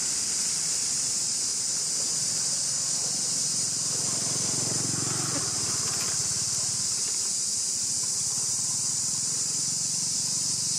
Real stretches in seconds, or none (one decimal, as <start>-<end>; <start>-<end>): 1.5-2.1

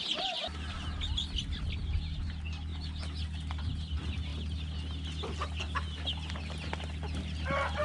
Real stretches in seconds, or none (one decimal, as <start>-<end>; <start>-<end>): 0.0-7.8

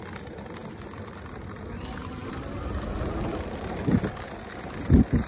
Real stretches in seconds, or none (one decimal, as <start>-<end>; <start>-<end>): 0.0-5.3

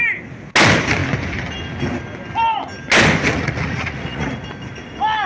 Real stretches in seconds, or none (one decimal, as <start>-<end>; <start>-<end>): 0.0-3.3; 4.3-5.3

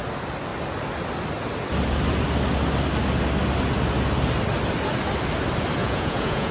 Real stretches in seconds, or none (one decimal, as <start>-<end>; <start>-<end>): 0.0-5.8

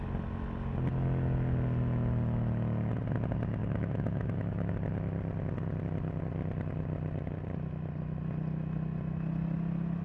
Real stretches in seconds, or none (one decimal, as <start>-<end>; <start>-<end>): 0.0-3.6; 4.7-10.0